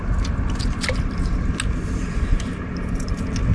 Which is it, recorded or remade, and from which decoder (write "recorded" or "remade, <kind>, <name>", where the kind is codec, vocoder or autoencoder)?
recorded